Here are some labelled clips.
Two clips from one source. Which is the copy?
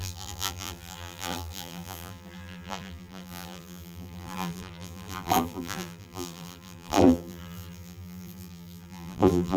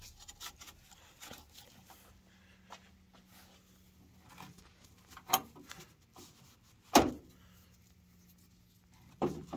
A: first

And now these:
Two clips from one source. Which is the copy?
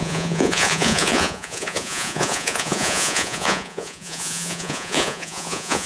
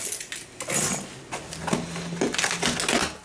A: first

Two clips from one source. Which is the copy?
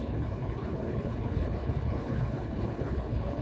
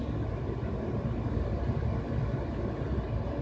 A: first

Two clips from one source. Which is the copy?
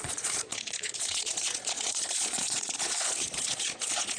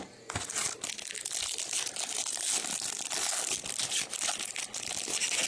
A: first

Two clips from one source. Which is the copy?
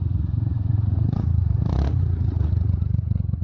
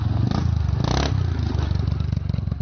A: first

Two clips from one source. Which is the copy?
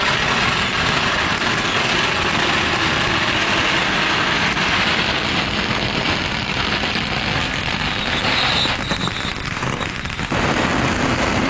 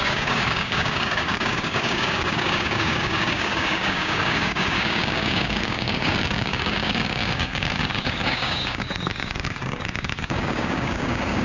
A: second